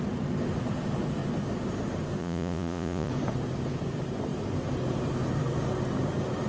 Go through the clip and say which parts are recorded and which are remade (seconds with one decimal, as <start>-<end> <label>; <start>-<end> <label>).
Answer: 0.0-2.2 recorded; 2.2-3.1 remade; 3.1-6.5 recorded

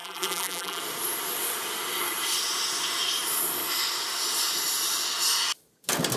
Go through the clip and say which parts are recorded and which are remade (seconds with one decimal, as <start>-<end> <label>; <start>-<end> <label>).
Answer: 0.0-0.8 remade; 0.8-6.2 recorded

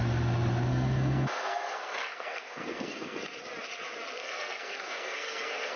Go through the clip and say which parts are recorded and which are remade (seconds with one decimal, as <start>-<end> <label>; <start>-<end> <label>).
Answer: 0.0-0.7 recorded; 0.7-3.2 remade; 3.2-4.2 recorded; 4.2-5.8 remade